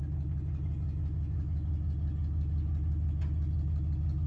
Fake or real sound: real